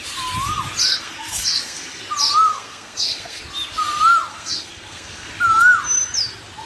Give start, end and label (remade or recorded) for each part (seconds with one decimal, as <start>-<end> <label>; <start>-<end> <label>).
0.0-0.9 recorded; 0.9-2.0 remade; 2.0-2.5 recorded; 2.5-3.4 remade; 3.4-4.3 recorded; 4.3-5.3 remade; 5.3-6.7 recorded